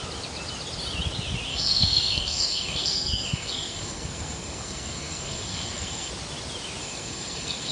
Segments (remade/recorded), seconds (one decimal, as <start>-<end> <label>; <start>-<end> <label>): 0.0-1.5 recorded; 1.5-6.1 remade; 6.1-6.8 recorded; 6.8-7.7 remade

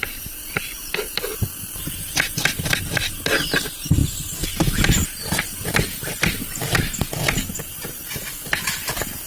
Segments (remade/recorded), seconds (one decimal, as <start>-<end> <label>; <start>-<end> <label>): 0.0-9.3 recorded

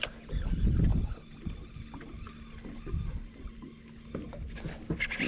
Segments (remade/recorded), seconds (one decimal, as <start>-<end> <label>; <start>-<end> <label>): 0.0-5.3 recorded

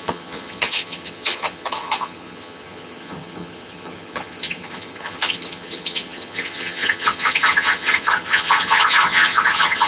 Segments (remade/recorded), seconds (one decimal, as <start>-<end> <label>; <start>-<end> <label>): 0.0-9.9 remade

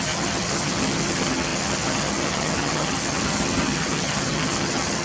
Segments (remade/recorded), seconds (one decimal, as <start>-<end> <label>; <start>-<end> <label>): 0.0-5.0 remade

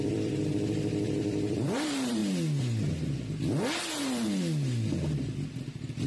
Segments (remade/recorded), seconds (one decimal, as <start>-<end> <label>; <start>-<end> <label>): 0.0-2.2 remade; 2.2-6.1 recorded